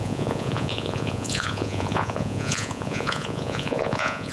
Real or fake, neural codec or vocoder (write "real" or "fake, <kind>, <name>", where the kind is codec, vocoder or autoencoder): fake, vocoder, Vocos